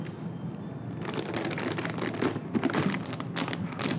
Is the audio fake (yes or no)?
no